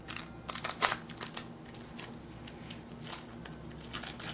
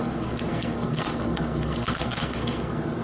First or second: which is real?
first